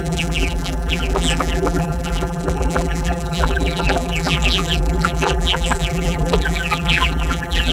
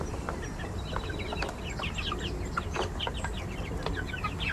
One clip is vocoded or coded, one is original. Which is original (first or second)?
second